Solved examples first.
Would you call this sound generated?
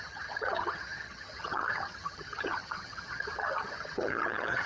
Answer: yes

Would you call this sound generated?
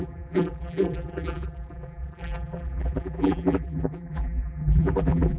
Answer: yes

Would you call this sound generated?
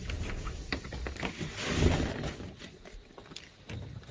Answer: no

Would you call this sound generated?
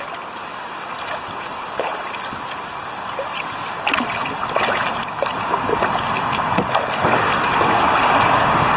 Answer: no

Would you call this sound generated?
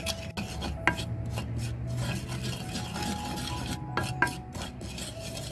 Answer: no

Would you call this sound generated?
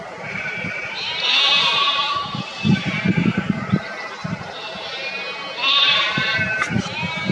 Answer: yes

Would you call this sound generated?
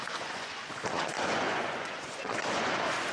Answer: yes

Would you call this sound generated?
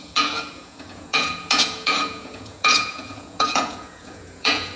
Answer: yes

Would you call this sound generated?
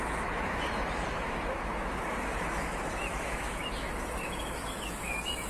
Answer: yes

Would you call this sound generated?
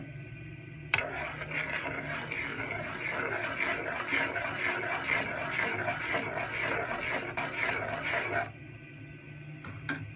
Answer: no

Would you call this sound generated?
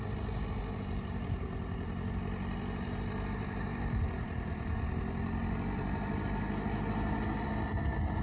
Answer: no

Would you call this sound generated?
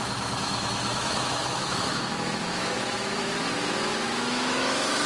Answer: yes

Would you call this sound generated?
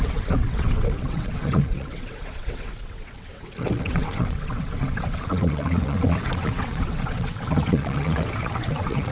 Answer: yes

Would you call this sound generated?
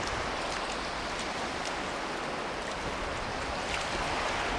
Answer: no